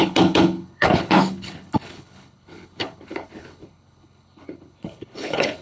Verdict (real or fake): fake